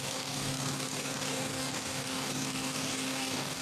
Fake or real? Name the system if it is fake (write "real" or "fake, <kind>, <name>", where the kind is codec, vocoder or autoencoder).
fake, codec, DAC